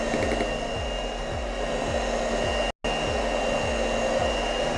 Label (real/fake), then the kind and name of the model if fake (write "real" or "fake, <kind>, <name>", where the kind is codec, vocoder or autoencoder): real